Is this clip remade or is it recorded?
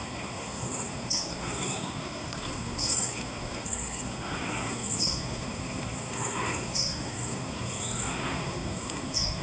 remade